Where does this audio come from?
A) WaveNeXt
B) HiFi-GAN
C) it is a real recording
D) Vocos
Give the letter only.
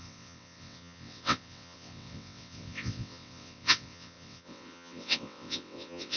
A